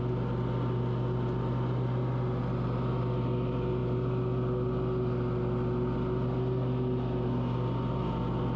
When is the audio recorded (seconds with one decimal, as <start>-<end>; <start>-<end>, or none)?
0.0-8.6